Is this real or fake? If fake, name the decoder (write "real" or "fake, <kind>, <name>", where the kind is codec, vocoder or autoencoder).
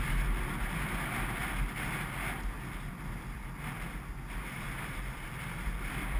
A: real